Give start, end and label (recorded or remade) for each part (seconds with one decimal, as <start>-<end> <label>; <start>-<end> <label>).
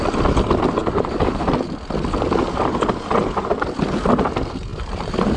0.0-0.8 recorded; 0.8-1.4 remade; 1.4-4.7 recorded; 4.7-5.4 remade